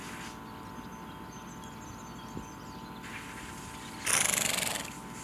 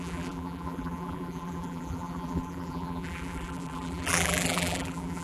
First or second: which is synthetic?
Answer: second